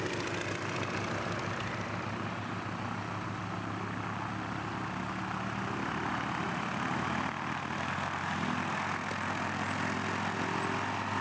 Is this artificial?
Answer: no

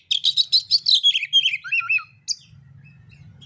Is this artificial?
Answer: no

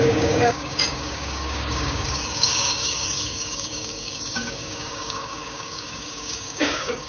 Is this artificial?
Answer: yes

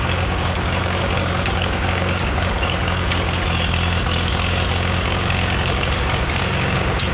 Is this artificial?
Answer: yes